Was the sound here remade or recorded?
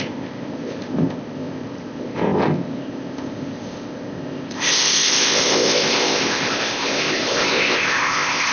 remade